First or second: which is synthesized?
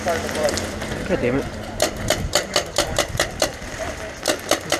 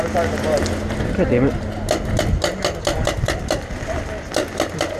first